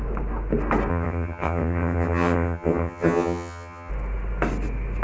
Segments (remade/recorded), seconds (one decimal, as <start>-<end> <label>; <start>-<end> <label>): 0.0-0.9 recorded; 0.9-3.9 remade; 3.9-5.0 recorded